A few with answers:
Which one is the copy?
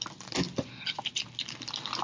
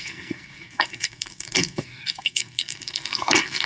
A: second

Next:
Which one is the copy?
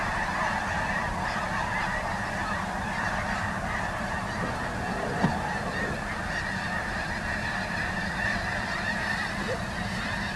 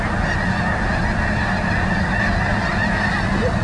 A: first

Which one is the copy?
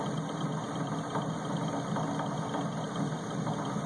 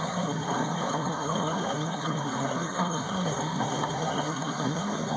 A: second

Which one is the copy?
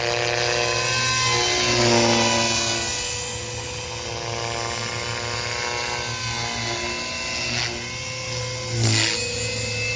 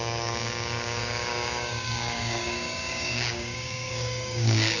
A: second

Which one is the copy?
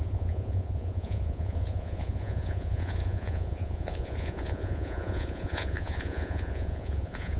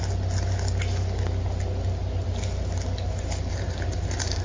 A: first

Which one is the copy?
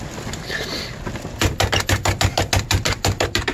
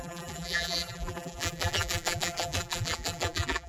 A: second